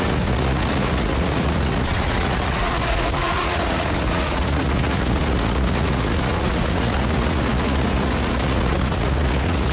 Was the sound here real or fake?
fake